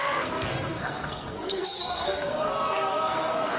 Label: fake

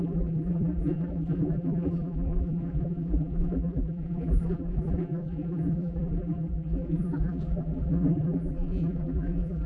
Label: fake